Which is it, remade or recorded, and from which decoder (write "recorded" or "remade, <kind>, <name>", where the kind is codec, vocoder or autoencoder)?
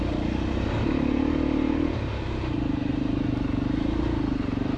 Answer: remade, vocoder, BigVGAN v2